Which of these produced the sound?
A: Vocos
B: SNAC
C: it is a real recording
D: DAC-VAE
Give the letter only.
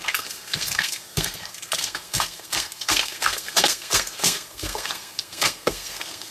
B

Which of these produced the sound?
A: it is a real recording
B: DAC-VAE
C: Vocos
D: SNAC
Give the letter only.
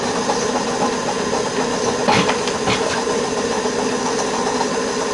A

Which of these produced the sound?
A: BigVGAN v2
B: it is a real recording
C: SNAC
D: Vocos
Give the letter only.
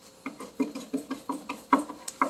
B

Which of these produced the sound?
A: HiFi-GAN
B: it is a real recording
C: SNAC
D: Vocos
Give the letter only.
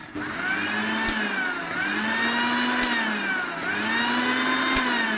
B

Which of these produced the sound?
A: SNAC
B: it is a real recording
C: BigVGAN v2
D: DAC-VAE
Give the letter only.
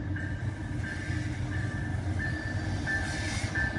B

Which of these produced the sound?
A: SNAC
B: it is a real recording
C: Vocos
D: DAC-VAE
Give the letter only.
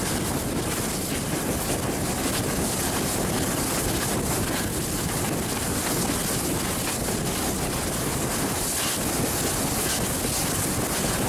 B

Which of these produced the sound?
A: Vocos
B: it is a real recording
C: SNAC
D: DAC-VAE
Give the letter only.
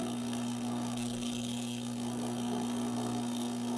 C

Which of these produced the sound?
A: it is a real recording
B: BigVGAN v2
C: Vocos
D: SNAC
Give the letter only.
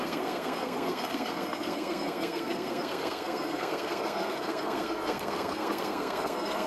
D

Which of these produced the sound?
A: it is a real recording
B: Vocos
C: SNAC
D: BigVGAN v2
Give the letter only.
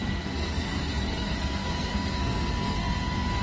C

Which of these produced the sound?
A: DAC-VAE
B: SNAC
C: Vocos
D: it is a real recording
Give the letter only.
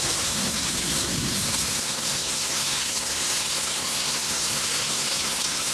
B